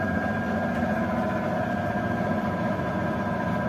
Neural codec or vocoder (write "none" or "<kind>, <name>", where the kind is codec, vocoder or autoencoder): vocoder, BigVGAN v2